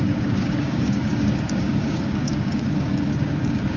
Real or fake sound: fake